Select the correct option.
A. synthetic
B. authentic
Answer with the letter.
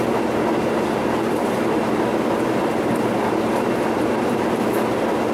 B